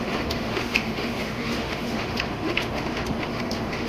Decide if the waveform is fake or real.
fake